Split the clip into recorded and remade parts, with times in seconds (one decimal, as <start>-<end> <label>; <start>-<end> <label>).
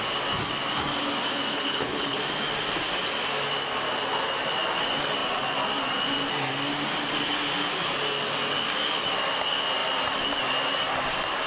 0.0-1.5 recorded; 1.5-2.2 remade; 2.2-11.5 recorded